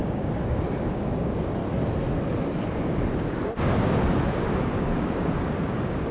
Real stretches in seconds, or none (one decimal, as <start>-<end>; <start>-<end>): 1.6-2.8